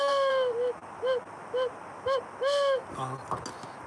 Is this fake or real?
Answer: real